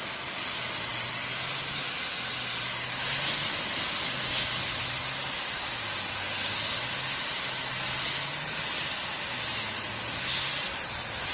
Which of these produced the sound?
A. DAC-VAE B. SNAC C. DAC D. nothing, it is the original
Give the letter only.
D